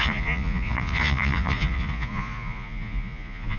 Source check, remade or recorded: remade